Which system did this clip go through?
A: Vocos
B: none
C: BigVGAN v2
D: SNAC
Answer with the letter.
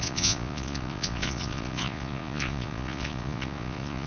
A